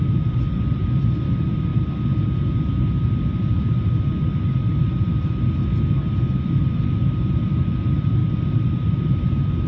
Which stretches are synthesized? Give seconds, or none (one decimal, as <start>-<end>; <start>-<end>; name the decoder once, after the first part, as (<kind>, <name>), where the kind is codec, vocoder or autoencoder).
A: 0.0-1.7 (vocoder, BigVGAN v2); 6.6-9.7